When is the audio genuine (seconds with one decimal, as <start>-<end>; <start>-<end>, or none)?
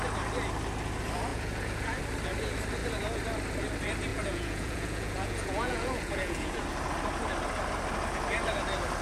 0.0-1.3; 2.0-4.1; 6.6-9.0